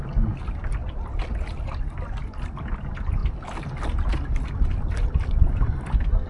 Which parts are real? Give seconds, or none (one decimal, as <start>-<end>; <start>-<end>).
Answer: 0.0-6.3